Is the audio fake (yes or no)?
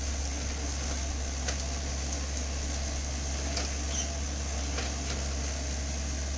no